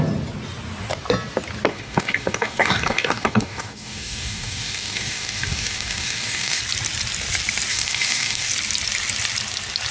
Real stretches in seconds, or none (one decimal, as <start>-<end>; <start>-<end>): 0.0-1.7; 6.6-7.7; 8.5-9.9